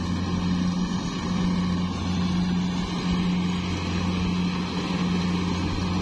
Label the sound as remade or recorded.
recorded